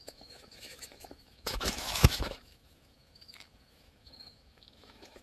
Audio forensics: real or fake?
fake